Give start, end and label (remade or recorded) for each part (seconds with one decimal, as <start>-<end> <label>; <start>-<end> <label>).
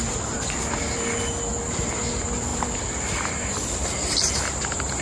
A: 0.0-5.0 recorded